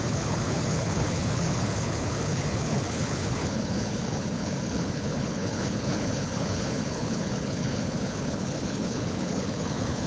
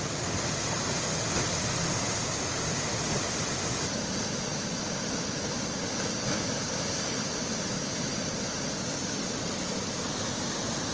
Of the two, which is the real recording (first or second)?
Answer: second